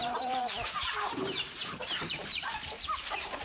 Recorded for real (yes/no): no